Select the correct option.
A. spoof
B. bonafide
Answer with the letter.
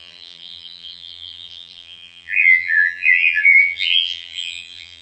A